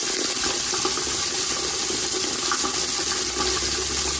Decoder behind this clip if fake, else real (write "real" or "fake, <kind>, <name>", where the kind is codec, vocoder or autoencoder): real